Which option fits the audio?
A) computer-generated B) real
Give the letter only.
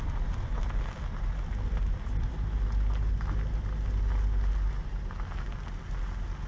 B